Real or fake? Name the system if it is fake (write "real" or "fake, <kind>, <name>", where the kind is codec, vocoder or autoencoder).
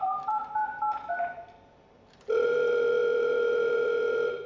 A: fake, vocoder, BigVGAN v2